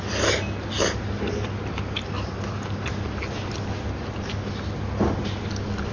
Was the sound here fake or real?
real